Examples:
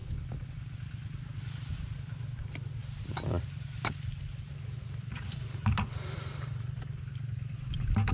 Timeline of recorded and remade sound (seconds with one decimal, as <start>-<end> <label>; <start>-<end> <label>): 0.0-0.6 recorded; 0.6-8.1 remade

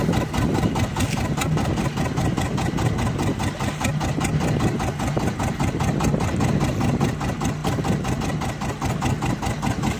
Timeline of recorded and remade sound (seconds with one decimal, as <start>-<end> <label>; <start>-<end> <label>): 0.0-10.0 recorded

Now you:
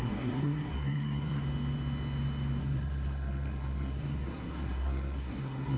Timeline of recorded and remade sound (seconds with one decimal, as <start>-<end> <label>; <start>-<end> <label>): 0.0-1.4 remade; 1.4-2.6 recorded; 2.6-5.8 remade

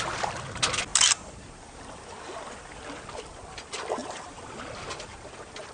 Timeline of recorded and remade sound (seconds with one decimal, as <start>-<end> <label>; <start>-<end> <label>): 0.0-4.0 recorded; 4.0-4.6 remade; 4.6-5.7 recorded

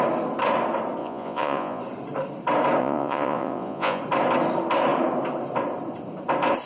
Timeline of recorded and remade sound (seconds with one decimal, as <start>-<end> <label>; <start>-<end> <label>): 0.0-1.0 recorded; 1.0-1.8 remade; 1.8-2.8 recorded; 2.8-4.0 remade; 4.0-6.7 recorded

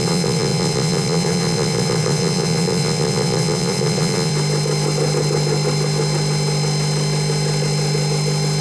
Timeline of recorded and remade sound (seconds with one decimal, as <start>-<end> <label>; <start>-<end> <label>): 0.0-4.3 remade; 4.3-8.6 recorded

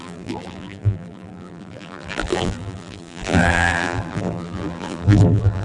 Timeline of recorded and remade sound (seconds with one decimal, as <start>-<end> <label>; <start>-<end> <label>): 0.0-5.6 remade

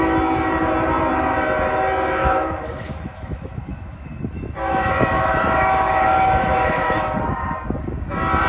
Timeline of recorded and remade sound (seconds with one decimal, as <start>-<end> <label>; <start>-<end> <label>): 0.0-2.2 recorded; 2.2-7.2 remade; 7.2-8.5 recorded